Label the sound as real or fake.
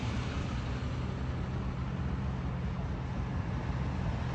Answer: real